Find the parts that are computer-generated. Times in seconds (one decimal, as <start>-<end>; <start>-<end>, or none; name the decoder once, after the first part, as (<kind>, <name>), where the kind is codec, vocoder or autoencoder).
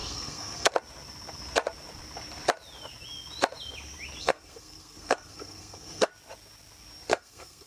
0.0-0.7 (codec, SNAC); 4.2-6.1; 7.1-7.7